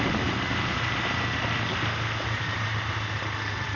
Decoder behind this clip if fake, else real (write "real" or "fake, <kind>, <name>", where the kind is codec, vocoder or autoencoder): real